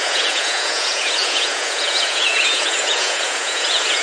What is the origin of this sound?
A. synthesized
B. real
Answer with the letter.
A